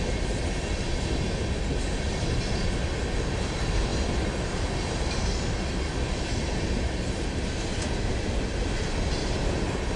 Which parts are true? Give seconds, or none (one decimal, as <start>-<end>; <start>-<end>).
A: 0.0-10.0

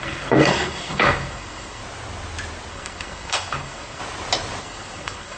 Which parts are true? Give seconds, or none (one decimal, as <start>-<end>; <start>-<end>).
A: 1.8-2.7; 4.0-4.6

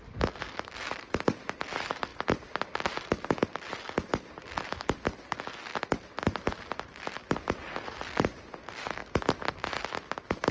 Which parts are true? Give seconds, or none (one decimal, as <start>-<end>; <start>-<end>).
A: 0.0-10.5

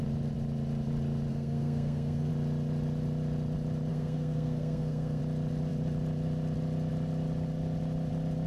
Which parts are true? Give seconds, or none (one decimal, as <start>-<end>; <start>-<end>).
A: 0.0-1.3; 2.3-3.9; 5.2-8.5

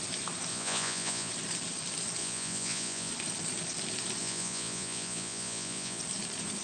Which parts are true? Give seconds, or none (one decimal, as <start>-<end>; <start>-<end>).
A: 0.0-0.5; 1.3-2.2; 3.1-4.2; 6.0-6.6

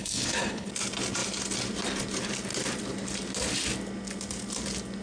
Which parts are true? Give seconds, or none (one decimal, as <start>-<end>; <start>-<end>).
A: 0.7-5.0

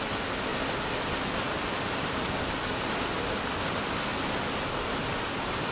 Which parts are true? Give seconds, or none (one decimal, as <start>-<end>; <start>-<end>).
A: 0.0-5.7